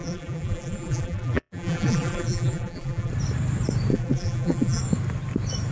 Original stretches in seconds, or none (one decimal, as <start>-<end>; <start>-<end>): 3.1-3.9; 4.8-5.7